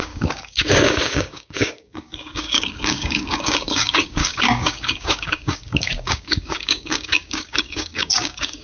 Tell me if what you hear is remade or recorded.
remade